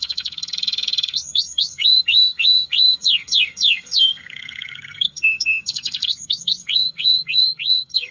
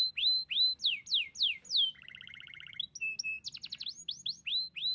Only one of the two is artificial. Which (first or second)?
first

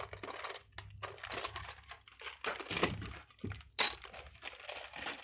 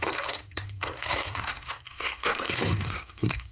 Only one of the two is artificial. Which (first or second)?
second